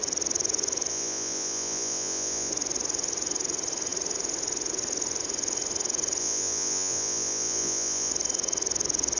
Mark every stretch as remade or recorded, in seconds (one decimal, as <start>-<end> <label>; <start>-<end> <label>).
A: 0.0-0.9 recorded; 0.9-2.5 remade; 2.5-6.2 recorded; 6.2-8.1 remade; 8.1-9.2 recorded